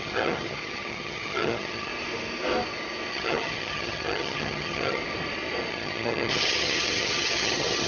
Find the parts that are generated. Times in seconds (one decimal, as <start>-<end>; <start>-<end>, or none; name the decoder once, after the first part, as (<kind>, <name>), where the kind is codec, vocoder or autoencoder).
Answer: 0.0-1.9 (vocoder, HiFi-GAN); 3.1-5.0; 5.7-7.9